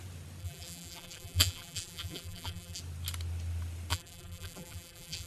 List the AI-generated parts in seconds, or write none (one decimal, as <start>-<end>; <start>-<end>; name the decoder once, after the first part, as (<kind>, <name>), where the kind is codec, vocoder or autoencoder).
0.4-2.8 (vocoder, BigVGAN v2); 3.9-5.3